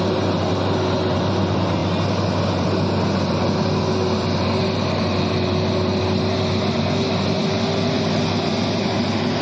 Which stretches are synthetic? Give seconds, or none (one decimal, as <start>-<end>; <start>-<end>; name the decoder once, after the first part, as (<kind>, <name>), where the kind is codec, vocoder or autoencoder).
none